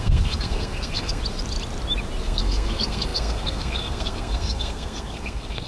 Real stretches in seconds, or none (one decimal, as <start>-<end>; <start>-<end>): 1.2-2.2